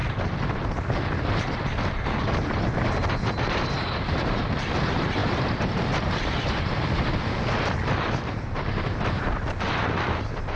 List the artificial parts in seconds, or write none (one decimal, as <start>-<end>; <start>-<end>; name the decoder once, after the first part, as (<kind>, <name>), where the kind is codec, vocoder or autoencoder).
2.7-10.6 (vocoder, BigVGAN v2)